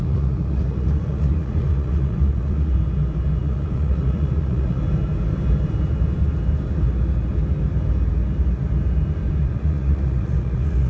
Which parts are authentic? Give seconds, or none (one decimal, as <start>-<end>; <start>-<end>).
2.7-3.4; 4.8-9.4